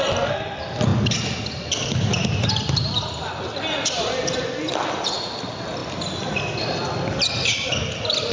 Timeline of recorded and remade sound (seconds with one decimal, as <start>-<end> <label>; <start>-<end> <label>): 0.0-8.3 recorded